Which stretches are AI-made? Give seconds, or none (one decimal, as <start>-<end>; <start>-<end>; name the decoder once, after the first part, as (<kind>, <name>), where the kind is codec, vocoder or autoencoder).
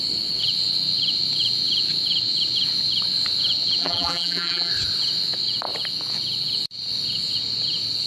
3.8-4.7 (vocoder, BigVGAN v2)